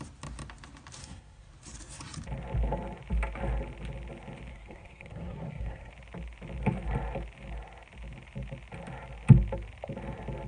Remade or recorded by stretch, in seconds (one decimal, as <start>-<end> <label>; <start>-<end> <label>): 0.0-1.0 recorded; 1.0-1.5 remade; 1.5-4.5 recorded; 4.5-5.9 remade; 5.9-10.5 recorded